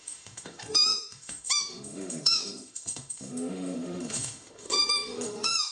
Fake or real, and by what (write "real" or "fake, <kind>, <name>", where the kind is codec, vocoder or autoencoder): fake, autoencoder, DAC-VAE